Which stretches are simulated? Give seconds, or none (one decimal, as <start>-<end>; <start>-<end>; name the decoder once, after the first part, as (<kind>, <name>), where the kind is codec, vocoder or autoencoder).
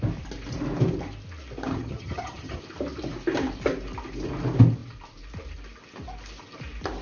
1.7-2.6 (vocoder, HiFi-GAN)